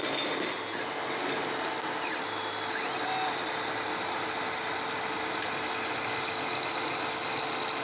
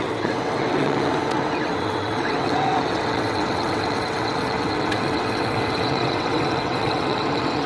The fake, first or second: second